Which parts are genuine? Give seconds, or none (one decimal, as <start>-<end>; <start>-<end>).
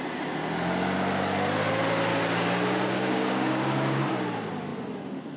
0.0-2.1; 4.1-5.4